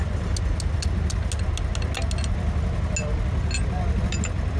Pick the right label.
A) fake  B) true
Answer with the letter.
B